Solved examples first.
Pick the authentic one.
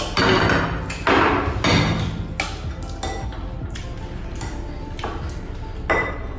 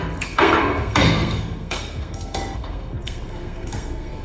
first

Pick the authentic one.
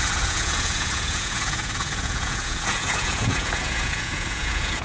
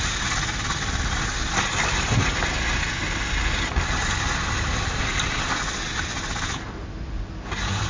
second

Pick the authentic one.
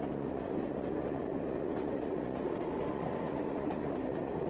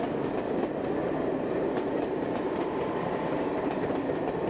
second